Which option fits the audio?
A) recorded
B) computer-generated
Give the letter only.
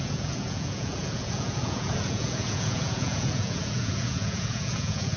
B